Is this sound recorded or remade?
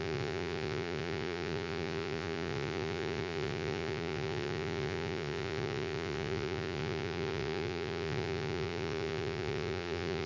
remade